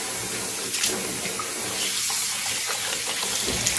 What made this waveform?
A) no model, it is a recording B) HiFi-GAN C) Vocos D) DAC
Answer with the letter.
A